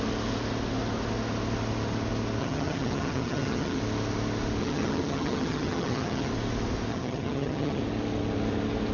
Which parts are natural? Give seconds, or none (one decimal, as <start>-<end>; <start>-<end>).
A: 0.0-2.4; 3.8-4.6; 6.3-6.9; 7.8-8.9